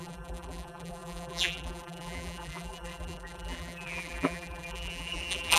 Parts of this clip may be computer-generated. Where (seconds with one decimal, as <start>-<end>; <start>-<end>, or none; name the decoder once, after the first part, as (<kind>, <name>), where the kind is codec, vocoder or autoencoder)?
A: 0.0-5.6 (vocoder, BigVGAN v2)

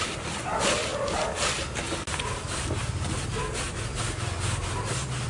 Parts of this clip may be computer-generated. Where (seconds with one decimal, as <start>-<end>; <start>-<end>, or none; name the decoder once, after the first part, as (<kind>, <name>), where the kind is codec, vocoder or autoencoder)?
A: none

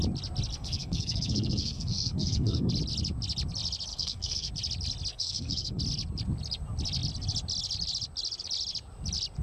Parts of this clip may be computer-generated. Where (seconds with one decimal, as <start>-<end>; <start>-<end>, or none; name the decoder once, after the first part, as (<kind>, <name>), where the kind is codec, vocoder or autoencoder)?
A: 0.5-2.7 (codec, SNAC); 3.9-4.5; 5.1-5.8

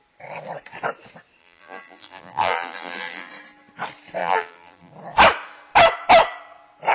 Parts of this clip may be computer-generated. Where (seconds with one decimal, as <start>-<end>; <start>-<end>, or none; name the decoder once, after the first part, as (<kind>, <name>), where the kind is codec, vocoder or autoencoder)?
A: 1.4-3.3 (vocoder, BigVGAN v2); 4.2-4.9

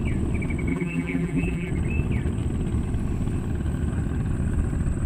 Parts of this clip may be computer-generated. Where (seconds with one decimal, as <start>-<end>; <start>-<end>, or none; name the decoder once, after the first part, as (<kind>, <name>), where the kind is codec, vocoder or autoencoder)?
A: 0.7-1.7 (vocoder, BigVGAN v2)